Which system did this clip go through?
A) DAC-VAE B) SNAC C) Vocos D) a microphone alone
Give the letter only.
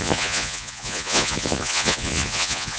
C